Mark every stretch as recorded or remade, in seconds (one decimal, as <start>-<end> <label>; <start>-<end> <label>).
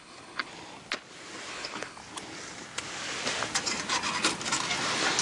0.0-0.5 remade; 0.5-1.5 recorded; 1.5-2.0 remade; 2.0-5.2 recorded